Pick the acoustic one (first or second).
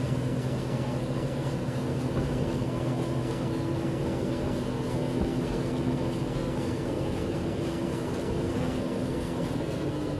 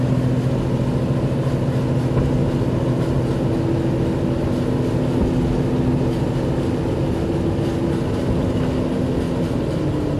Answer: second